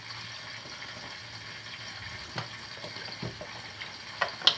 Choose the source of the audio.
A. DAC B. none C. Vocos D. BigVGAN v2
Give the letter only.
B